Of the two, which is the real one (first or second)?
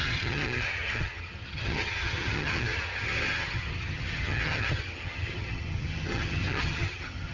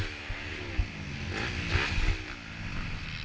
second